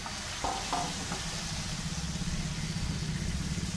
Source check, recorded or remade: recorded